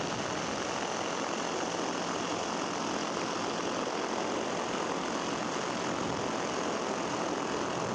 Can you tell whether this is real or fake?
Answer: real